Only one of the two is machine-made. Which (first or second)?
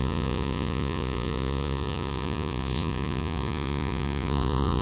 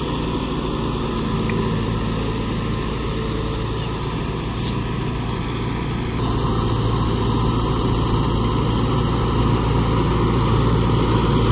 first